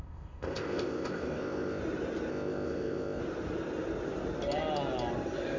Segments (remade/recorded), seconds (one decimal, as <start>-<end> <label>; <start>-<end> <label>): 0.0-1.8 remade; 1.8-2.3 recorded; 2.3-3.2 remade; 3.2-5.6 recorded

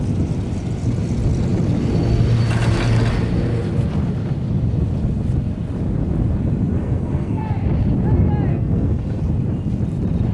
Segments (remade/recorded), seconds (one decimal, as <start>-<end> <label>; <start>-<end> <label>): 0.0-6.8 recorded; 6.8-7.4 remade; 7.4-8.5 recorded; 8.5-9.2 remade; 9.2-10.3 recorded

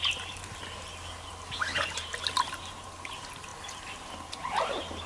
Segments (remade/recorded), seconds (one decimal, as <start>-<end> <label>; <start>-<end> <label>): 0.0-5.1 recorded

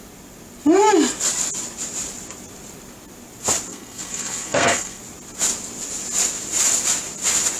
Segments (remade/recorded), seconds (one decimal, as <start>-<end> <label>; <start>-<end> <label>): 0.0-3.7 recorded; 3.7-5.0 remade; 5.0-7.6 recorded